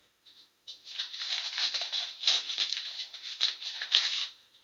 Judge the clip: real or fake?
fake